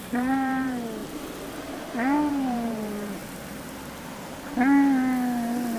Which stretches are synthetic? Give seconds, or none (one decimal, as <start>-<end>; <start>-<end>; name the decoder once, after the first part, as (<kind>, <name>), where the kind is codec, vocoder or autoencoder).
0.0-1.0 (vocoder, BigVGAN v2); 2.3-3.2